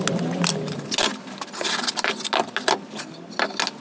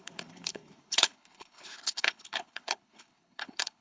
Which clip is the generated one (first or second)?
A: second